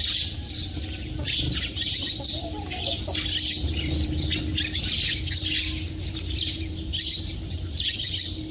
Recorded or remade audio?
recorded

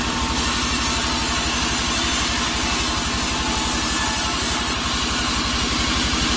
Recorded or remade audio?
recorded